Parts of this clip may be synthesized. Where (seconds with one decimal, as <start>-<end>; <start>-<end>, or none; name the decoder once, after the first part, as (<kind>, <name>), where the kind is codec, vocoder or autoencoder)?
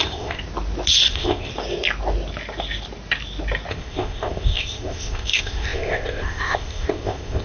0.0-0.4 (codec, ZipCodec); 1.1-1.5; 3.7-7.4